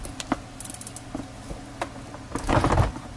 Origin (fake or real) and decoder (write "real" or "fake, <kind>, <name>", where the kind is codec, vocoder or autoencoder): real